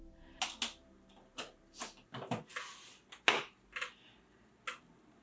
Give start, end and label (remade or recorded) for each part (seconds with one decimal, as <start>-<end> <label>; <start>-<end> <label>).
0.0-5.2 recorded